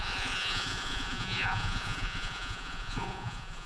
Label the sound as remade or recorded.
remade